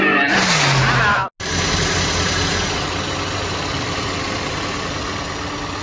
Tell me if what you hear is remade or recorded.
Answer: recorded